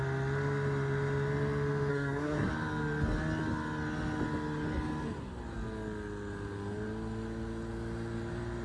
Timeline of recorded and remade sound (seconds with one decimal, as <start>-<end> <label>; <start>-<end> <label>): 0.0-1.9 recorded; 1.9-2.5 remade; 2.5-8.6 recorded

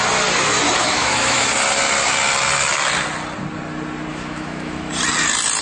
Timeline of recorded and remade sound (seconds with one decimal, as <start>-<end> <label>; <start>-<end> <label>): 0.0-0.8 recorded; 0.8-1.5 remade; 1.5-4.1 recorded; 4.1-4.9 remade; 4.9-5.6 recorded

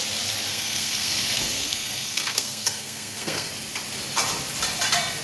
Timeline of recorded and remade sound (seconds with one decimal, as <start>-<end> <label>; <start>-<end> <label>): 0.0-0.5 recorded; 0.5-3.5 remade; 3.5-5.2 recorded

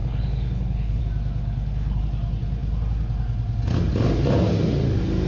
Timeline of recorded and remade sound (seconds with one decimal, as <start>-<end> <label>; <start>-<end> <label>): 0.0-1.0 remade; 1.0-1.4 recorded; 1.4-2.0 remade; 2.0-5.3 recorded

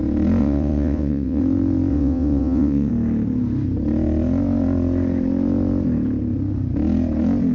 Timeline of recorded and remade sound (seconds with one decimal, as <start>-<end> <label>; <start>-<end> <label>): 0.0-0.4 recorded; 0.4-1.4 remade; 1.4-1.9 recorded; 1.9-2.9 remade; 2.9-7.5 recorded